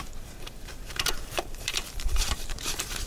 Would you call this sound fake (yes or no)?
yes